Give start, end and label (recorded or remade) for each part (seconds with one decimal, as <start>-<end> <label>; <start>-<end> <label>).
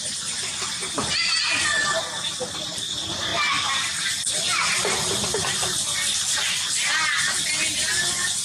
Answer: 0.0-8.4 recorded